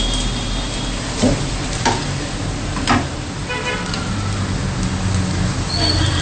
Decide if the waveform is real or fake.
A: real